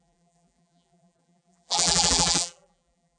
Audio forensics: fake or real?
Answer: fake